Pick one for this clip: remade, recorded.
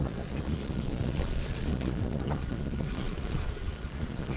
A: remade